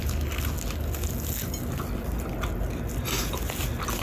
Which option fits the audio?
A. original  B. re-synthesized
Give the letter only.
A